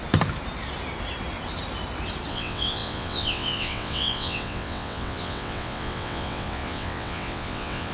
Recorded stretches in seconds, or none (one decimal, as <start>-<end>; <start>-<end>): 0.0-2.3